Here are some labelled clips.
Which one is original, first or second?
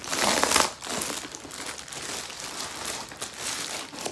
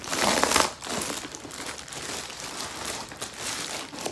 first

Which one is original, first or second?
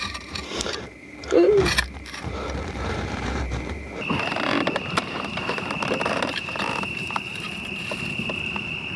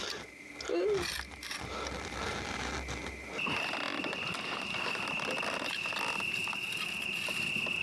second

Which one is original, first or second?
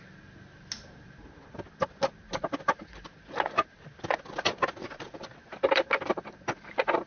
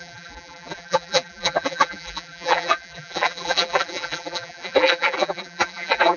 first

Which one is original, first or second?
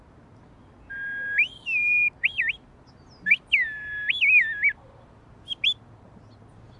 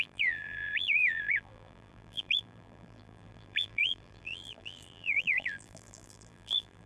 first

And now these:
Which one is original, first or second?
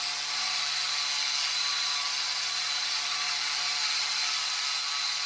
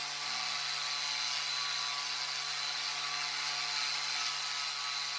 second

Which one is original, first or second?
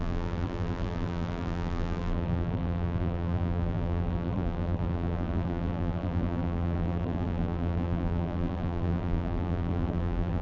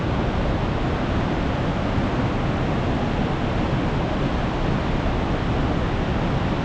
second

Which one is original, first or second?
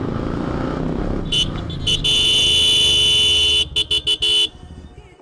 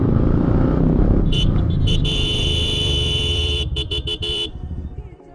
first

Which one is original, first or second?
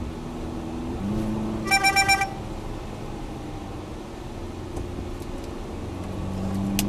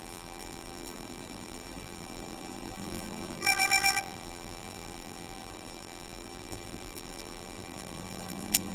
first